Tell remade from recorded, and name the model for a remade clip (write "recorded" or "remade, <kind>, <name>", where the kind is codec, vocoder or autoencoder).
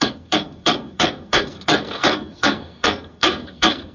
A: remade, codec, SNAC